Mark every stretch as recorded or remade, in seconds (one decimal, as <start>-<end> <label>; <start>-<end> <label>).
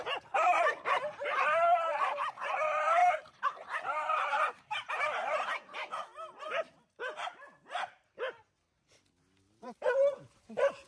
0.0-5.2 remade; 5.2-9.6 recorded; 9.6-10.9 remade